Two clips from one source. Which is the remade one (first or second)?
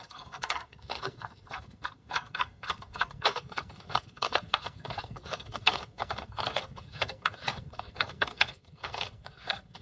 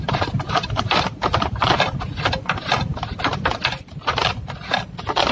first